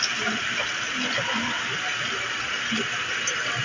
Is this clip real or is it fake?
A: real